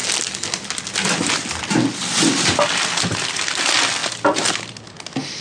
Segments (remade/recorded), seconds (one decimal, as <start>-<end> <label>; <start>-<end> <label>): 0.0-5.4 recorded